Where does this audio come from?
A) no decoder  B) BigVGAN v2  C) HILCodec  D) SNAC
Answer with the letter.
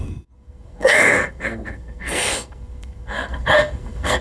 D